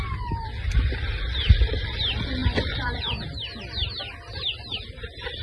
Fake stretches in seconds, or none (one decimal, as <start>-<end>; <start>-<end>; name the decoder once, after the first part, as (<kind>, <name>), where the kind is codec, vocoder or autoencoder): 2.4-3.2 (vocoder, BigVGAN v2)